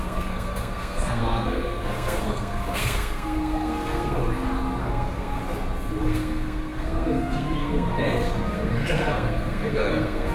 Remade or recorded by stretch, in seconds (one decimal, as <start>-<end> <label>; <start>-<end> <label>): 0.0-4.2 remade; 4.2-4.8 recorded; 4.8-5.4 remade; 5.4-6.0 recorded; 6.0-10.3 remade